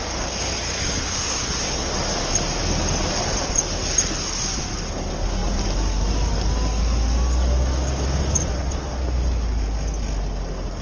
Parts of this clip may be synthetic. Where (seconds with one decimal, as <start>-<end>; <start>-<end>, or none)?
none